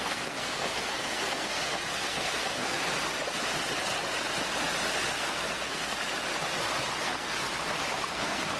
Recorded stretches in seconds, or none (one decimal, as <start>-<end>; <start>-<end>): 2.8-5.1; 6.0-7.0; 7.5-8.1